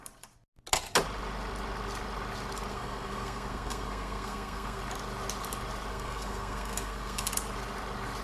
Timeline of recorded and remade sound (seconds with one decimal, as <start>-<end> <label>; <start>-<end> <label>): 0.0-2.7 recorded; 2.7-4.8 remade; 4.8-5.9 recorded; 5.9-7.3 remade; 7.3-8.2 recorded